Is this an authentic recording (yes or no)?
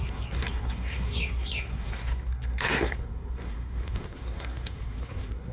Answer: no